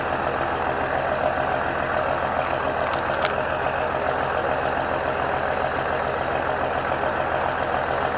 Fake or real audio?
real